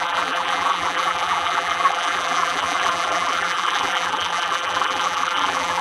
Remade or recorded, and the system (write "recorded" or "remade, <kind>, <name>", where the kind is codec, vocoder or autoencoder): remade, vocoder, BigVGAN v2